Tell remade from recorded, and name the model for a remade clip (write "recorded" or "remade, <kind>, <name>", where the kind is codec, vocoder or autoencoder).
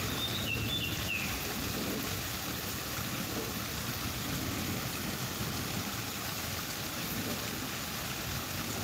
recorded